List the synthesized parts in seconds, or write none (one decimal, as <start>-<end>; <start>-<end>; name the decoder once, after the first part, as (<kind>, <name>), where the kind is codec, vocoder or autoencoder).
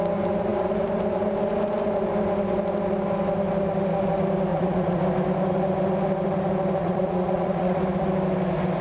4.5-5.0 (vocoder, Vocos); 6.8-7.8